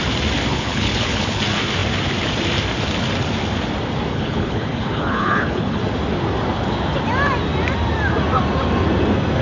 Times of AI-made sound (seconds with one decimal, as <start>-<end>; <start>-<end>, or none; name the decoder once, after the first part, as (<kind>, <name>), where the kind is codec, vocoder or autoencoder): 0.5-1.4 (codec, HILCodec); 4.1-5.8